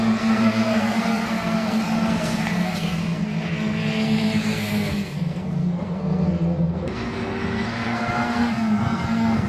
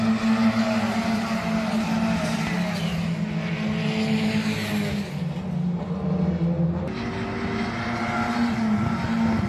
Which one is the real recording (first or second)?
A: second